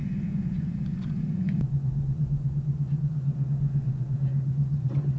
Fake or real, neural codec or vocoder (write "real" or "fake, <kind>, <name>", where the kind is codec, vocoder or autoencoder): fake, vocoder, Vocos